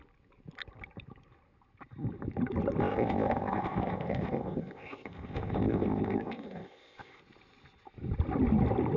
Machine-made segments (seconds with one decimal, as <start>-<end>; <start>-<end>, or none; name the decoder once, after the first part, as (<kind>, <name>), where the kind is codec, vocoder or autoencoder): 2.8-7.2 (codec, ZipCodec)